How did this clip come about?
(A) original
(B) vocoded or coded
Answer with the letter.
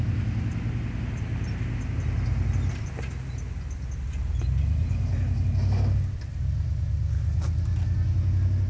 A